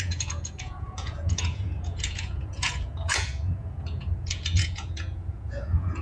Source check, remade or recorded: remade